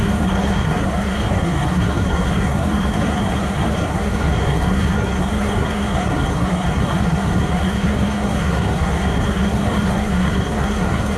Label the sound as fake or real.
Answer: fake